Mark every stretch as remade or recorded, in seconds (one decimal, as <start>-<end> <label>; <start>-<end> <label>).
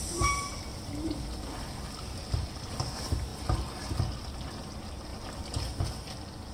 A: 0.0-3.3 remade; 3.3-4.3 recorded; 4.3-6.5 remade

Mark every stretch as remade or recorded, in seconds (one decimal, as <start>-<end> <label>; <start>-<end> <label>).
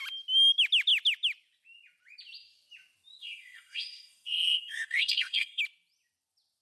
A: 0.0-3.2 recorded; 3.2-5.6 remade; 5.6-6.6 recorded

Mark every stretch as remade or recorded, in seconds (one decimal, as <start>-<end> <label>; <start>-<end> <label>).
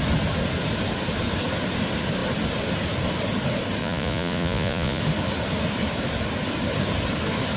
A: 0.0-3.8 recorded; 3.8-5.0 remade; 5.0-7.6 recorded